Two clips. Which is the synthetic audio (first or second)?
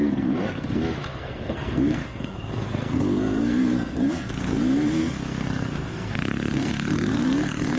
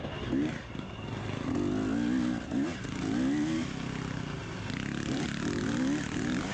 first